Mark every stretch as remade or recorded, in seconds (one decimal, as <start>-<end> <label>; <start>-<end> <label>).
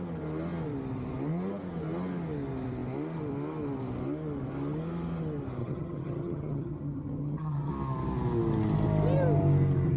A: 0.0-5.6 recorded; 5.6-7.7 remade; 7.7-10.0 recorded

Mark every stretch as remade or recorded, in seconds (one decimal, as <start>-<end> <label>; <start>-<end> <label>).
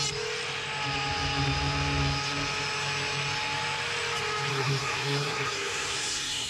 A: 0.0-4.5 recorded; 4.5-6.5 remade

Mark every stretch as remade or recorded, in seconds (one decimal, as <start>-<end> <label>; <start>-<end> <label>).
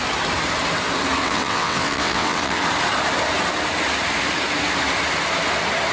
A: 0.0-1.2 recorded; 1.2-2.6 remade; 2.6-5.9 recorded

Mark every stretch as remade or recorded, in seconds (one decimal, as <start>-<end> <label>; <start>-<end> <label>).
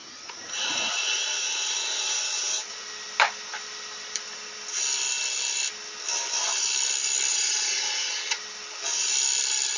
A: 0.0-2.9 remade; 2.9-7.3 recorded; 7.3-8.1 remade; 8.1-9.8 recorded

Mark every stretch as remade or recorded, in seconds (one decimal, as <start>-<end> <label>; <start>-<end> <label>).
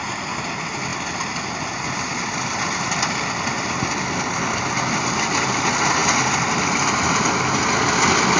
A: 0.0-8.4 recorded